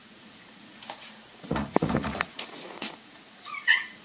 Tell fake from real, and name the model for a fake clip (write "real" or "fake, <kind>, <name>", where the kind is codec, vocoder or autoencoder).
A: fake, vocoder, Vocos